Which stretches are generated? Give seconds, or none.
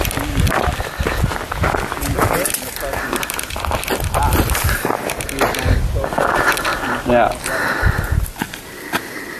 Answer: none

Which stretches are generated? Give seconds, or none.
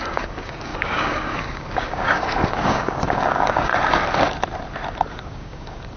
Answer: 0.0-3.7; 5.1-6.0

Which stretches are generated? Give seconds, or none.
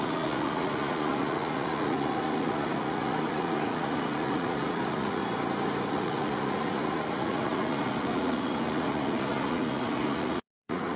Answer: 0.0-5.2; 5.9-11.0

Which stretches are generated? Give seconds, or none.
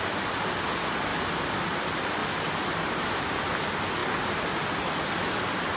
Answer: none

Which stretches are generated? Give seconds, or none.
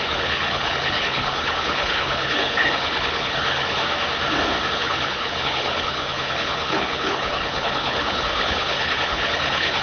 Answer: 0.0-3.8; 4.7-9.8